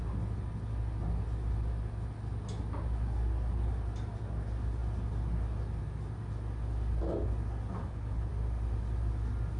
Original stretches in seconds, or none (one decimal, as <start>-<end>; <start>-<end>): 0.0-7.8; 8.3-9.6